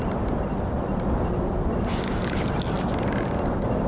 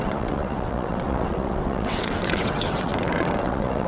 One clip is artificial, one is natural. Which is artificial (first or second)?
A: second